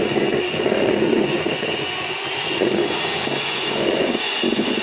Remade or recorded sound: remade